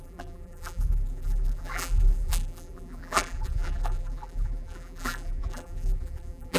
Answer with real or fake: fake